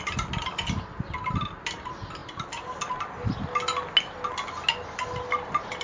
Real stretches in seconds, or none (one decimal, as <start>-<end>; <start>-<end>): 0.0-5.8